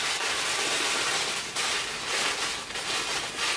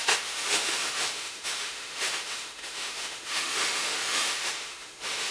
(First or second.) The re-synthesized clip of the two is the second